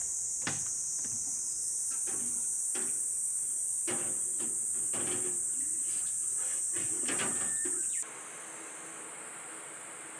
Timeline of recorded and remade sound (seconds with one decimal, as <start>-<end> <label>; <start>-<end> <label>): 0.0-5.8 recorded; 5.8-6.7 remade; 6.7-10.2 recorded